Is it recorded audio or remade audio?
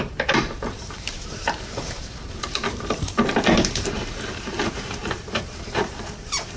remade